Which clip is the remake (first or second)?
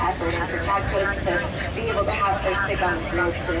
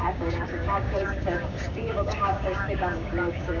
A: second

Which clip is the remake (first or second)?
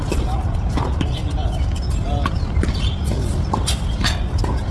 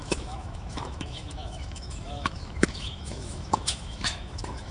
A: second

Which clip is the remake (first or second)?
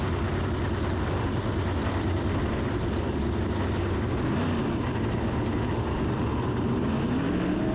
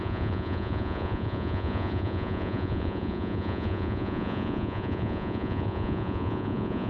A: second